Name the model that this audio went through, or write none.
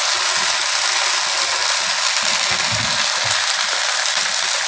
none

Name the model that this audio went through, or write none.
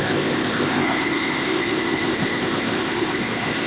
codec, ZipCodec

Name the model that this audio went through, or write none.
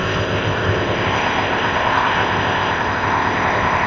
codec, ZipCodec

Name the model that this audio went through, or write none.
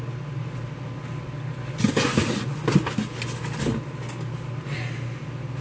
none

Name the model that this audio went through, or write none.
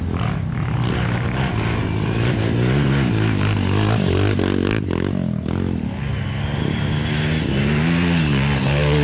none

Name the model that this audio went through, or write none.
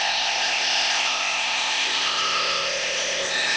codec, ZipCodec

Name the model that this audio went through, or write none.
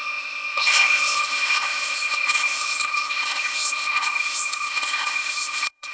codec, ZipCodec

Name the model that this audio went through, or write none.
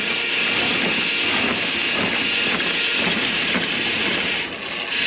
none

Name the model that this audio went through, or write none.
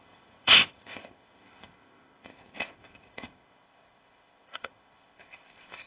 codec, ZipCodec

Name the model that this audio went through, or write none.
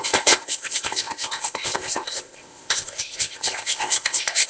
codec, ZipCodec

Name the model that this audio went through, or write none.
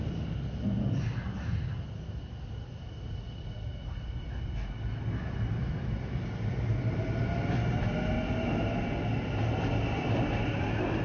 none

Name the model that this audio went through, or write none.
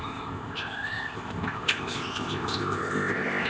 codec, ZipCodec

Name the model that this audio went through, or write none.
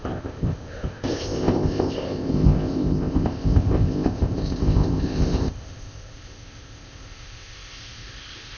codec, ZipCodec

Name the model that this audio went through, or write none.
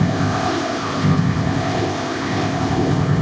codec, ZipCodec